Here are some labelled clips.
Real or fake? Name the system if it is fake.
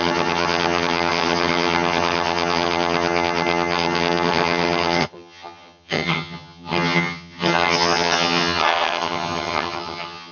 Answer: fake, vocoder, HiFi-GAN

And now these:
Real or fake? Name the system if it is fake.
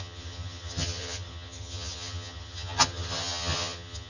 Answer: fake, vocoder, HiFi-GAN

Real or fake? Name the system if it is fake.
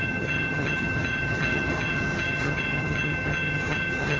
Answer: fake, vocoder, HiFi-GAN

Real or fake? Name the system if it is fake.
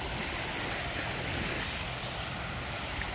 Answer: real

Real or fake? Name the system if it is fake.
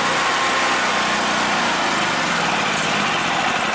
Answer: real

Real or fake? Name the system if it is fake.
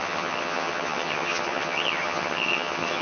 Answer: fake, vocoder, HiFi-GAN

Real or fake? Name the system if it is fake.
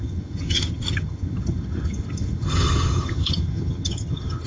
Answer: fake, vocoder, HiFi-GAN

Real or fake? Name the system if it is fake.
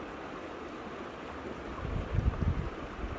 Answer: real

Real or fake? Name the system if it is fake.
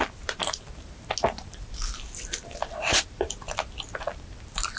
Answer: real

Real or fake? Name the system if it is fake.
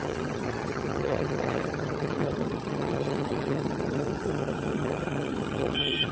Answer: fake, vocoder, HiFi-GAN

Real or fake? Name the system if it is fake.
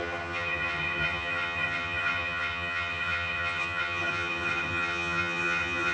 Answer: fake, vocoder, HiFi-GAN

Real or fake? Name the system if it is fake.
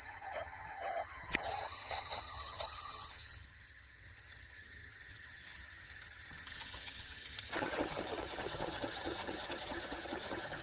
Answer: fake, vocoder, HiFi-GAN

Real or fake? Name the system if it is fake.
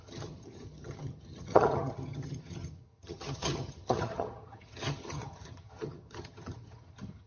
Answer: fake, vocoder, HiFi-GAN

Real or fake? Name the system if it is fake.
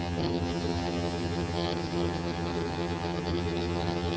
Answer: fake, vocoder, HiFi-GAN